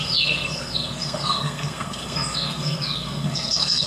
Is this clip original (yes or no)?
no